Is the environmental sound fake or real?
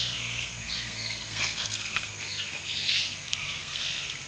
fake